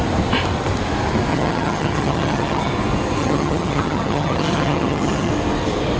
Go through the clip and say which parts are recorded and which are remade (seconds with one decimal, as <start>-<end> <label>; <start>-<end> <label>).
0.0-1.3 recorded; 1.3-2.7 remade; 2.7-3.2 recorded; 3.2-5.3 remade; 5.3-6.0 recorded